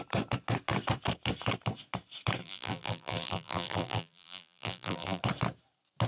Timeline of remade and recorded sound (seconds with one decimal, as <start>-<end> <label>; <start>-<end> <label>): 0.0-2.4 recorded; 2.4-5.2 remade; 5.2-6.1 recorded